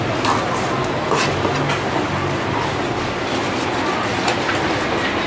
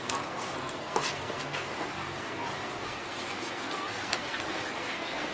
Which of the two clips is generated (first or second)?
second